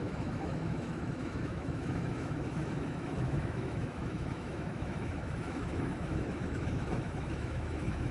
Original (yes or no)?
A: no